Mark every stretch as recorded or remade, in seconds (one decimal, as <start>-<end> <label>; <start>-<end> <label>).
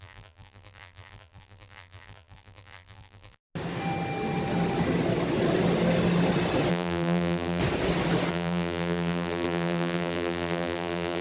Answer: 0.0-3.4 remade; 3.4-6.7 recorded; 6.7-7.6 remade; 7.6-8.3 recorded; 8.3-11.2 remade